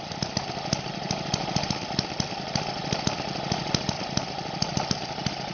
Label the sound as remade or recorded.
recorded